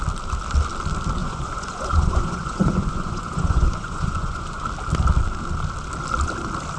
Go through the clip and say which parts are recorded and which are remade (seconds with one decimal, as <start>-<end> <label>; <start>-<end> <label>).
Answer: 0.0-1.2 recorded; 1.2-4.6 remade; 4.6-6.8 recorded